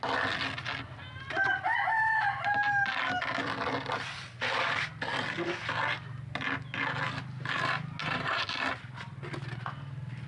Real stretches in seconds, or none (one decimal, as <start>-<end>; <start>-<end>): 0.0-8.0; 8.6-10.3